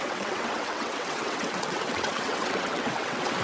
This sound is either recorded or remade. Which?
remade